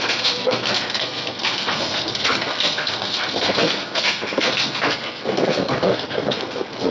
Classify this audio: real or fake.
fake